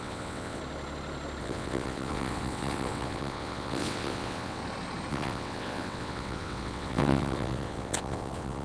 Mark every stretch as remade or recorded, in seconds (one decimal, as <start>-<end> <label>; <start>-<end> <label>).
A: 0.0-0.6 remade; 0.6-1.4 recorded; 1.4-4.6 remade; 4.6-5.1 recorded; 5.1-8.6 remade